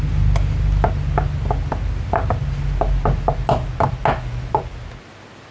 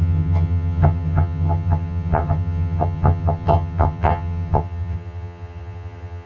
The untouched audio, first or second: first